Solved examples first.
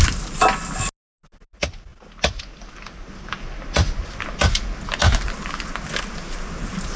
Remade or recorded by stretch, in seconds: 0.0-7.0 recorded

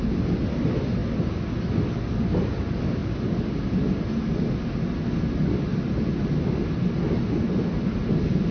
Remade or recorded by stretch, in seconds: 0.0-8.5 recorded